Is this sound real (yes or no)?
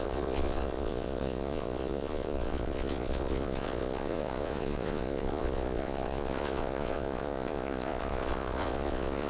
no